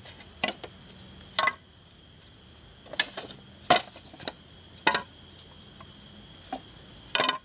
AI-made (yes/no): no